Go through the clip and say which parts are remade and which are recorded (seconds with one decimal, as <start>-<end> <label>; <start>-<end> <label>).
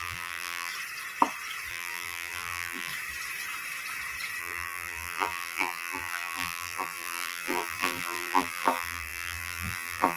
0.0-0.7 remade; 0.7-1.7 recorded; 1.7-2.9 remade; 2.9-4.4 recorded; 4.4-10.2 remade